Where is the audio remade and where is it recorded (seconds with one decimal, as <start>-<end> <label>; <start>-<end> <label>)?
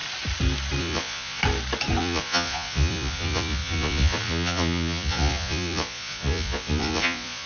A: 0.0-0.8 recorded; 0.8-1.4 remade; 1.4-2.0 recorded; 2.0-7.5 remade